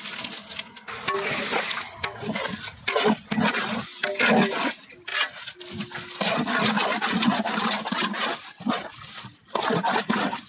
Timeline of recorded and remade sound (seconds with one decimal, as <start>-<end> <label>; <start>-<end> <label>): 0.0-10.5 recorded